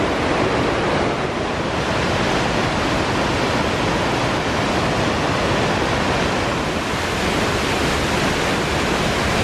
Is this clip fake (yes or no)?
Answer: no